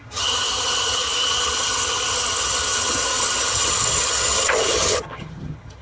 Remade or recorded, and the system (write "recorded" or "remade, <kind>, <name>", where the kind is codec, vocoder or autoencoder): remade, vocoder, HiFi-GAN